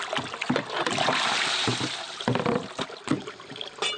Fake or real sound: real